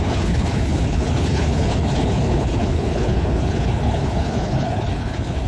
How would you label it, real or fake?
fake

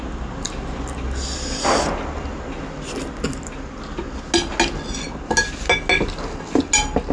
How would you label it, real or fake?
real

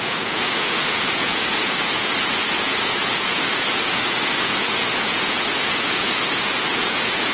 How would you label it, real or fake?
fake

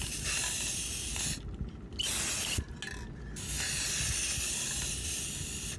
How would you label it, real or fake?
real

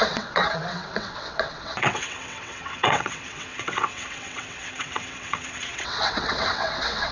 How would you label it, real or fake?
fake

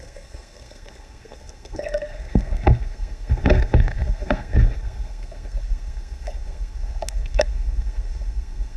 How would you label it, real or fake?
fake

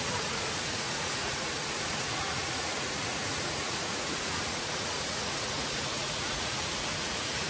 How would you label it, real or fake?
fake